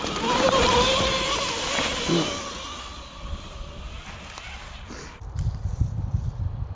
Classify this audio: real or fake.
real